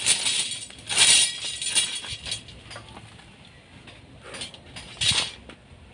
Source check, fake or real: real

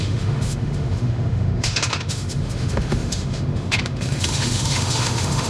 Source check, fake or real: fake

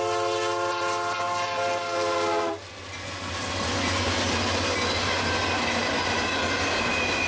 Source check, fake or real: real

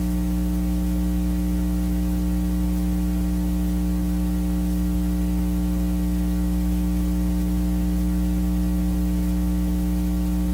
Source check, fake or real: real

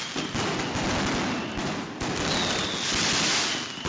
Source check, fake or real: real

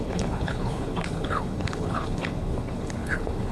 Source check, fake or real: fake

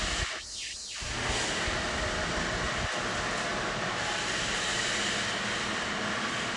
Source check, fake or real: real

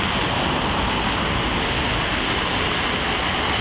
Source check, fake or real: real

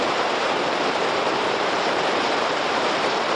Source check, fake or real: fake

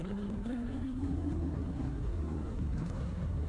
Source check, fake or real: fake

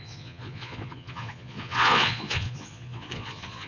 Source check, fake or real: fake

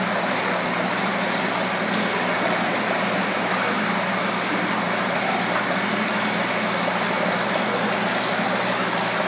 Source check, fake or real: real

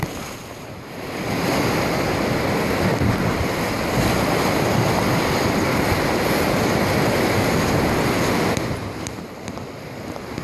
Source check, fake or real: real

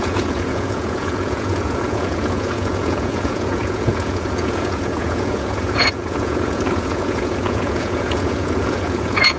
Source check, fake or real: fake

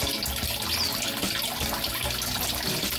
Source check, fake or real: real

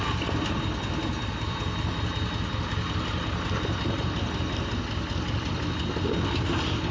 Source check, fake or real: real